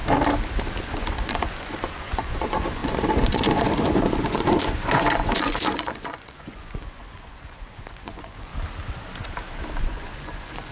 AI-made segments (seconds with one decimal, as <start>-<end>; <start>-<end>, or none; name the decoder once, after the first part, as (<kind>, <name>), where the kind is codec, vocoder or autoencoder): 0.8-8.5 (vocoder, Vocos); 9.8-10.7